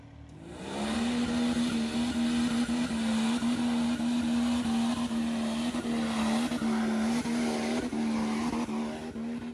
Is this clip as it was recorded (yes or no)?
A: yes